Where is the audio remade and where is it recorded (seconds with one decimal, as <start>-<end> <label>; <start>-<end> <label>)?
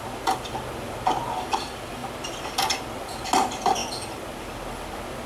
0.0-5.3 recorded